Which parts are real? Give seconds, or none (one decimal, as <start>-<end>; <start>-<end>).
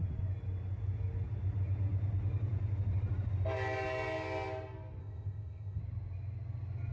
0.0-5.0; 5.8-6.9